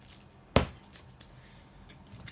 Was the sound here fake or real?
real